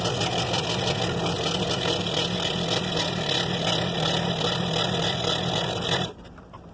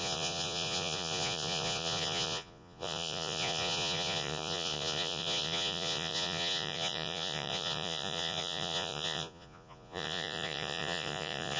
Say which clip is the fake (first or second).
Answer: second